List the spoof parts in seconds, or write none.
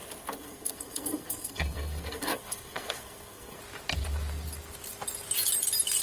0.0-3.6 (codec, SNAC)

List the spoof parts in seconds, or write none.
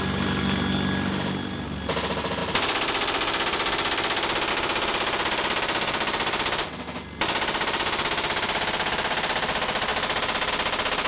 none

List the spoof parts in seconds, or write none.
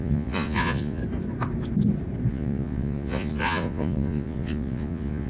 0.0-1.0 (vocoder, Vocos); 2.3-5.3